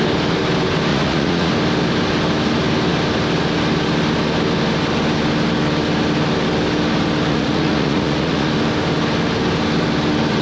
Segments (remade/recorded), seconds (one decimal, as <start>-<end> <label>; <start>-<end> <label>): 0.0-0.9 recorded; 0.9-1.5 remade; 1.5-7.3 recorded; 7.3-8.5 remade; 8.5-10.4 recorded